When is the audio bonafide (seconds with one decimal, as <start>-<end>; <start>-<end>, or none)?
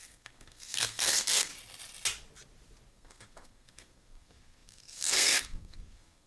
1.5-2.9